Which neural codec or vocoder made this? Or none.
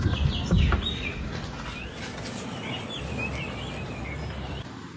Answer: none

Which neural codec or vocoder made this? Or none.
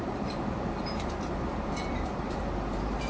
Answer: vocoder, BigVGAN v2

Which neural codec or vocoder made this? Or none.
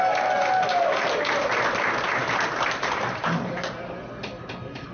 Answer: none